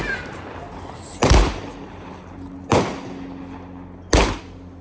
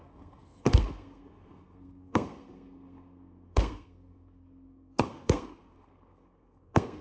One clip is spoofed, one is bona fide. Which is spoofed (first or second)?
second